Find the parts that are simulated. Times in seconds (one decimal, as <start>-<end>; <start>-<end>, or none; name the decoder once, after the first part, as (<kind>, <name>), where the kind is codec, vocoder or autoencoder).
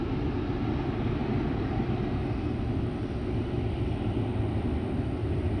none